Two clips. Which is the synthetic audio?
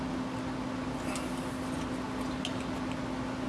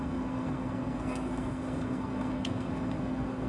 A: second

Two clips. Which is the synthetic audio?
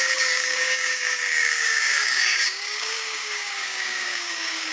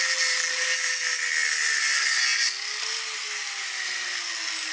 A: first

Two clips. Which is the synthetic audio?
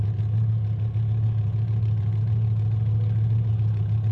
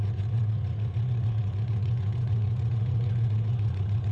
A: second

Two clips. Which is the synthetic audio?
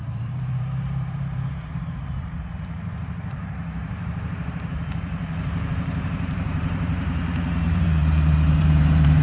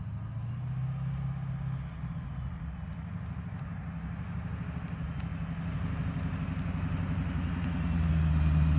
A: first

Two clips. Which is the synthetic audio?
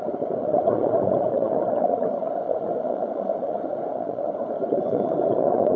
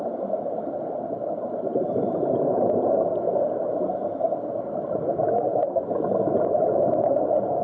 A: first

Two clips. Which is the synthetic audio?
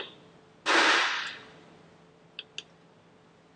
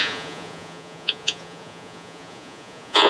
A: second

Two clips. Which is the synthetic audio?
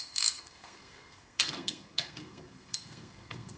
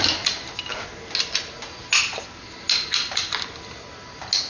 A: first